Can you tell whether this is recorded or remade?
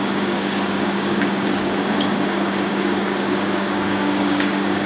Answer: remade